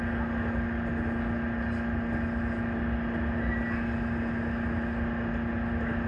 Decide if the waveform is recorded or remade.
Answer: recorded